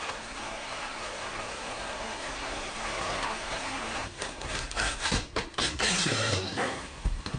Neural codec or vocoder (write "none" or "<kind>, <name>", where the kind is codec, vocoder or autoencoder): codec, SNAC